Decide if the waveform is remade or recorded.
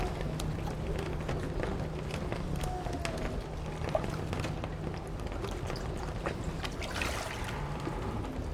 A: recorded